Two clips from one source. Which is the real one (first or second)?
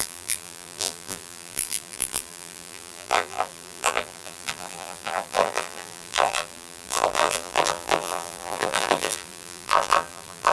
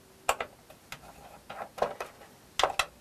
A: second